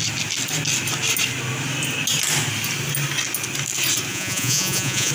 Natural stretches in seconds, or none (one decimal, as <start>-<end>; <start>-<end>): 0.0-4.1